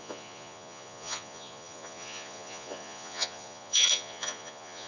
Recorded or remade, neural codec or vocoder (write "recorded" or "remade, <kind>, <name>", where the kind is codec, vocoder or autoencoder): remade, vocoder, Vocos